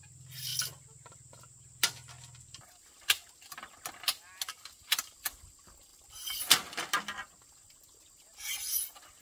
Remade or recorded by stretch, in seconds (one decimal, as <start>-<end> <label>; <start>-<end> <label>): 0.0-9.2 recorded